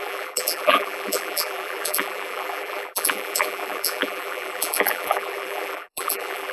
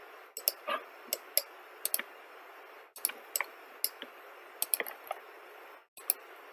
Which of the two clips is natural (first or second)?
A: second